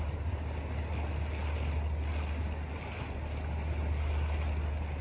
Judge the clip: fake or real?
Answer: real